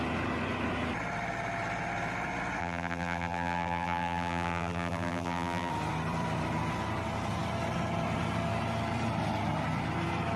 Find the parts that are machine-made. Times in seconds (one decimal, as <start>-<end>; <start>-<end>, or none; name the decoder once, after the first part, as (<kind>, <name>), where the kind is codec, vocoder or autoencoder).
2.6-5.7 (vocoder, BigVGAN v2)